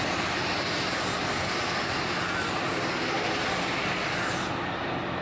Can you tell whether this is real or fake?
real